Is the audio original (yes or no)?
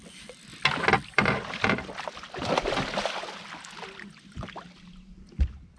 yes